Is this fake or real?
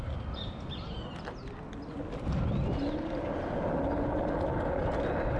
real